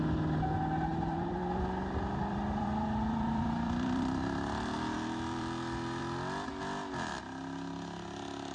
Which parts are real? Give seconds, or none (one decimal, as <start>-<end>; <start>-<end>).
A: 0.0-0.9; 6.0-8.5